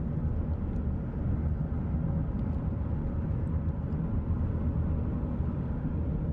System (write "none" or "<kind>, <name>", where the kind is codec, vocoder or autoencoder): none